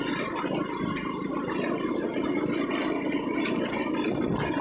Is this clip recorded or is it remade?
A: recorded